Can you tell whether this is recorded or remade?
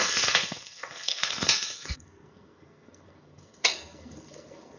remade